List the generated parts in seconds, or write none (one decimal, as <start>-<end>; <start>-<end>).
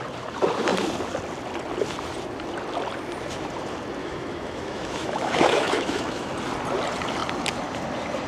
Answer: 4.0-6.3